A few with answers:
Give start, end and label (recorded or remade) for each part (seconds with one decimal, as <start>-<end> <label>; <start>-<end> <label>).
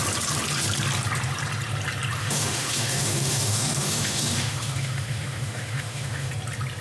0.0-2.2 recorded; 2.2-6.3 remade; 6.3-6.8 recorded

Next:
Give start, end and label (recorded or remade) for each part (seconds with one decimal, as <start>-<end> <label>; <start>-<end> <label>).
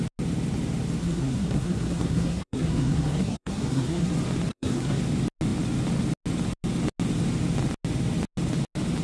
0.0-1.0 recorded; 1.0-4.1 remade; 4.1-4.5 recorded; 4.5-5.0 remade; 5.0-9.0 recorded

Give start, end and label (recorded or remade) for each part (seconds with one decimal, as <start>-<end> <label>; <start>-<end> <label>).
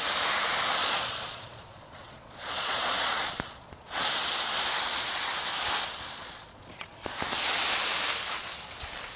0.0-0.8 recorded; 0.8-4.1 remade; 4.1-6.2 recorded; 6.2-7.2 remade; 7.2-9.2 recorded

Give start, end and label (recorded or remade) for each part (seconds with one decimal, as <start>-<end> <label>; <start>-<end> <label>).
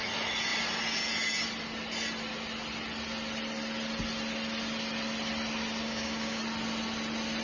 0.0-5.8 recorded; 5.8-6.4 remade; 6.4-7.4 recorded